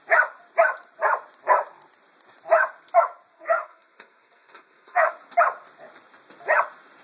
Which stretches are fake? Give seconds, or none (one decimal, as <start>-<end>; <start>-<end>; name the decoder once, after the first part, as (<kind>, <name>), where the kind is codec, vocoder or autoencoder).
3.3-5.1 (codec, SNAC)